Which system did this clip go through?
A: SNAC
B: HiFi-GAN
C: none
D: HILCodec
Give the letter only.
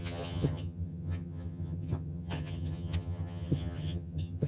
B